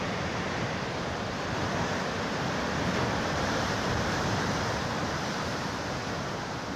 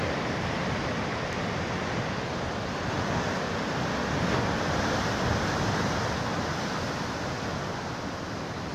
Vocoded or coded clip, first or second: first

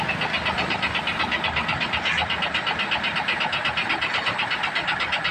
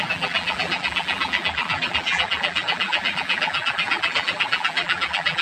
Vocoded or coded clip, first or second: second